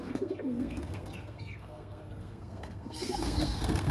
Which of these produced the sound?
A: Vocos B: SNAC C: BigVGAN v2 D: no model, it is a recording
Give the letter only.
B